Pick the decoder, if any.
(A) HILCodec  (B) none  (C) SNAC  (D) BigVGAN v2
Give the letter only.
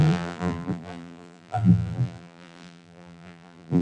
D